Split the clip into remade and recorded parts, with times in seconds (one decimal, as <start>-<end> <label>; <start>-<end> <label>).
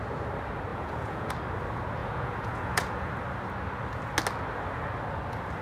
0.0-0.7 recorded; 0.7-1.3 remade; 1.3-2.0 recorded; 2.0-3.1 remade; 3.1-5.6 recorded